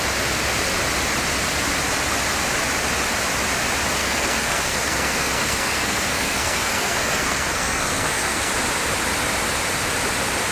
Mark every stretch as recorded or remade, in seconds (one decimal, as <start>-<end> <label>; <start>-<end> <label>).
0.0-4.0 recorded; 4.0-8.5 remade; 8.5-10.5 recorded